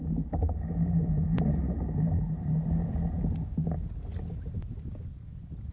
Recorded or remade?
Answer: recorded